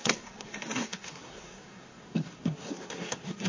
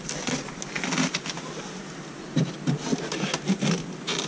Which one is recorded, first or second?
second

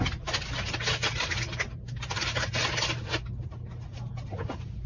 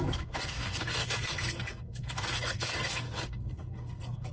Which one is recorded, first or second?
first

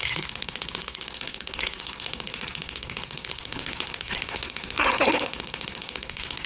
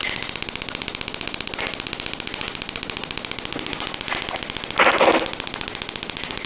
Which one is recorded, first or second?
second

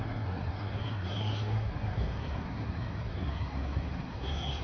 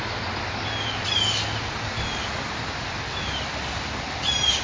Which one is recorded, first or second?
second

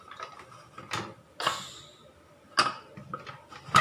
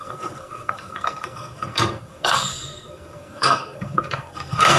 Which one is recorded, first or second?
first